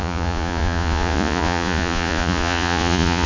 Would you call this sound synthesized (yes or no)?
yes